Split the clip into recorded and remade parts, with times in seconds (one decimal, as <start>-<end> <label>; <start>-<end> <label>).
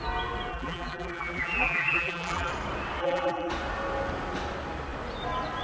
0.0-0.5 recorded; 0.5-2.5 remade; 2.5-3.0 recorded; 3.0-3.5 remade; 3.5-5.6 recorded